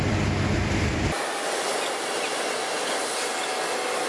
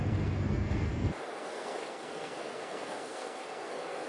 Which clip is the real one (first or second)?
first